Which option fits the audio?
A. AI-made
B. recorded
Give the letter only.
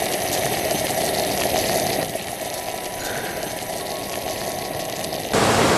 B